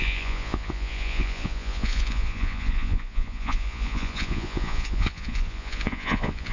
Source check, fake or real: fake